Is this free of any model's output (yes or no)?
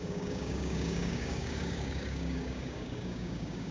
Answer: no